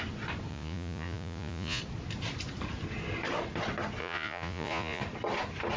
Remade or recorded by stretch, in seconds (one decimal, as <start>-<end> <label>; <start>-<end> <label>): 0.0-0.5 recorded; 0.5-1.8 remade; 1.8-4.0 recorded; 4.0-5.0 remade; 5.0-5.8 recorded